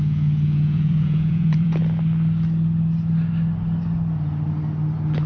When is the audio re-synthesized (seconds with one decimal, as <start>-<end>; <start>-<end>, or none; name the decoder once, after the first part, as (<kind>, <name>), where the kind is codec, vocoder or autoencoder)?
0.0-1.8 (vocoder, Vocos)